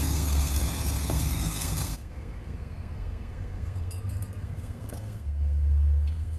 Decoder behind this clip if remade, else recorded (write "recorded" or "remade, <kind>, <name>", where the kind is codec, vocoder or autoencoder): remade, codec, SNAC